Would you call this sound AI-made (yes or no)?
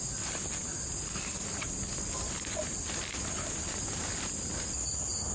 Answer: no